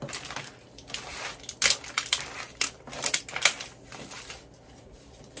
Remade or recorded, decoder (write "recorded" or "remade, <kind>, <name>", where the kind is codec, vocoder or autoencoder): recorded